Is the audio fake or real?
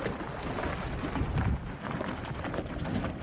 real